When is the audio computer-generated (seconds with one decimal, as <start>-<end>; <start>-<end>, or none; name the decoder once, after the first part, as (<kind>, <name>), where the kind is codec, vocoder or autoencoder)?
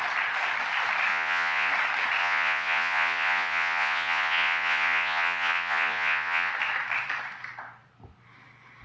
1.1-1.7 (vocoder, Vocos); 2.2-6.5